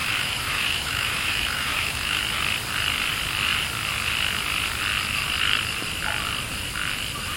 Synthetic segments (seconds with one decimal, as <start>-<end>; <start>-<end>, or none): 0.0-2.2